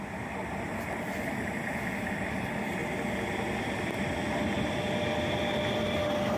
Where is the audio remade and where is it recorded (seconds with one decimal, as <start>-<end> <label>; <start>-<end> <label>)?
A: 0.0-6.4 recorded